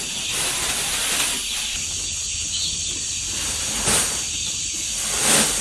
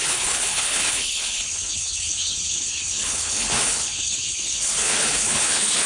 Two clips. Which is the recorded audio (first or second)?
first